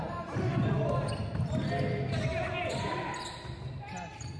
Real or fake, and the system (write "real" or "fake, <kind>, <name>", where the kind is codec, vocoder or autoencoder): real